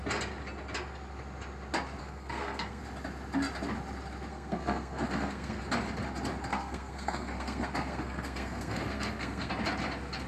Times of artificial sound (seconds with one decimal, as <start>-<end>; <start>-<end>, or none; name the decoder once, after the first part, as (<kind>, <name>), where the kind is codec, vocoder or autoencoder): 2.0-2.8 (codec, SNAC); 4.3-5.6; 6.5-9.5